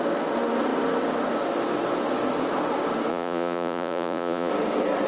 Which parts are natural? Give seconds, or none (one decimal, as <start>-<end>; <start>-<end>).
0.0-3.1; 4.5-5.1